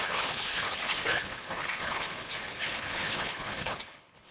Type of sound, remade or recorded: remade